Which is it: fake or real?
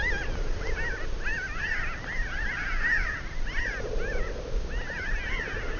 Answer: real